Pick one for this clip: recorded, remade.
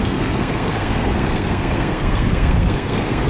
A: remade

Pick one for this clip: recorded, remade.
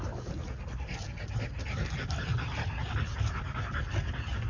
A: recorded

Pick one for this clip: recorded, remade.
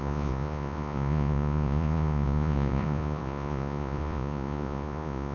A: remade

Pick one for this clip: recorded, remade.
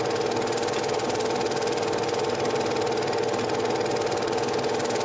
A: recorded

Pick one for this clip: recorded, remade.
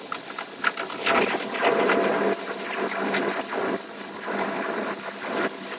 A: recorded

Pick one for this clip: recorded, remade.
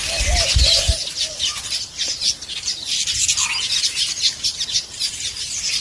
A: recorded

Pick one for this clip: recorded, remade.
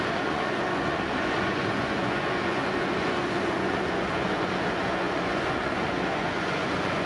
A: remade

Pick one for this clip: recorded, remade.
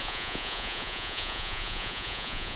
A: remade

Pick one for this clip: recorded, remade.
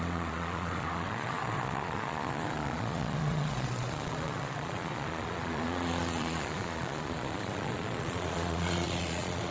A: remade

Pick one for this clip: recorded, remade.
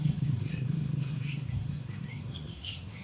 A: remade